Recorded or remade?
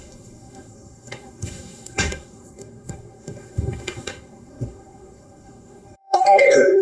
remade